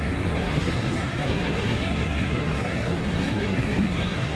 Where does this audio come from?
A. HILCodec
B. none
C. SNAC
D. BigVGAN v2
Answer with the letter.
C